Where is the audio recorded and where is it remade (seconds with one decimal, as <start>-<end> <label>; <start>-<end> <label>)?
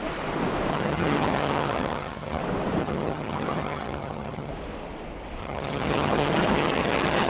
0.0-0.7 recorded; 0.7-2.4 remade; 2.4-2.8 recorded; 2.8-4.5 remade; 4.5-5.4 recorded; 5.4-7.3 remade